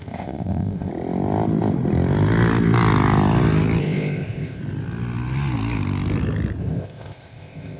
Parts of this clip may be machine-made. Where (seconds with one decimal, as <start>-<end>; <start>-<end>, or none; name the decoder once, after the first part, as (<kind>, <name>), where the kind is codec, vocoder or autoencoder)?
0.0-0.9 (codec, ZipCodec); 3.8-4.6; 6.6-7.8